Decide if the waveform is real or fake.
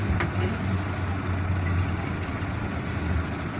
real